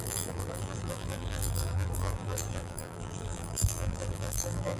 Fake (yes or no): yes